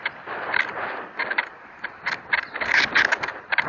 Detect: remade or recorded recorded